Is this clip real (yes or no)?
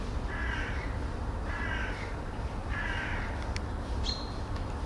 yes